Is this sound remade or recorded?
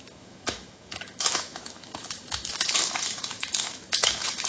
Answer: remade